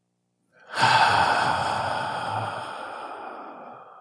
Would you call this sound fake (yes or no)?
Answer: no